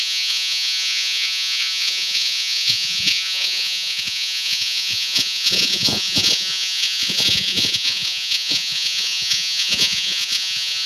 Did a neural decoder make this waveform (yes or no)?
yes